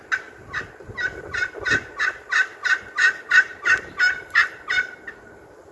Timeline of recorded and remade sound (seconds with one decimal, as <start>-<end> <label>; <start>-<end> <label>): 0.0-3.5 recorded; 3.5-4.9 remade; 4.9-5.7 recorded